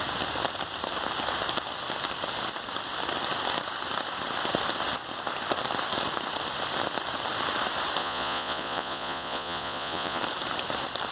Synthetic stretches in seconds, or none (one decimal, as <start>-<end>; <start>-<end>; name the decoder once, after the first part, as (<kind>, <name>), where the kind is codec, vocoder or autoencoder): 8.0-10.2 (vocoder, Vocos)